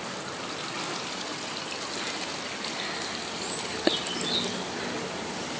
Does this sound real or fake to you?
real